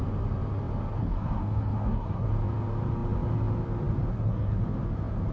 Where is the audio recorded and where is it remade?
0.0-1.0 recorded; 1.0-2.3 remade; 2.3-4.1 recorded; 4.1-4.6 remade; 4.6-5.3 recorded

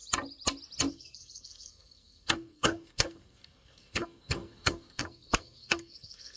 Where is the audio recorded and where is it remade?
0.0-0.9 recorded; 0.9-6.4 remade

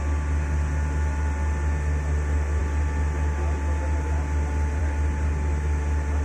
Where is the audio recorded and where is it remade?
0.0-6.2 recorded